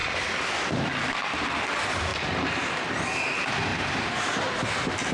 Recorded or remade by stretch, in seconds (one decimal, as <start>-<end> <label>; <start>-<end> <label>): 0.0-3.7 recorded; 3.7-4.5 remade; 4.5-5.1 recorded